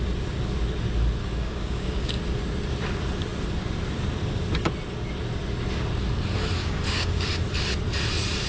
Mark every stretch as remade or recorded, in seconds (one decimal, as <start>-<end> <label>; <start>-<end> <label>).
0.0-1.2 recorded; 1.2-2.2 remade; 2.2-6.6 recorded; 6.6-7.3 remade; 7.3-8.5 recorded